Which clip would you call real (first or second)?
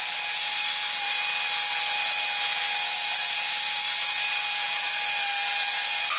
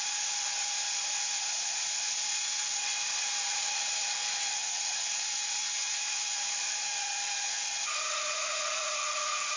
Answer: first